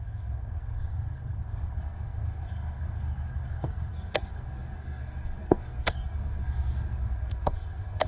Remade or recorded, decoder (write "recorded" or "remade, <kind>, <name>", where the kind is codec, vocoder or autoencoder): remade, codec, SNAC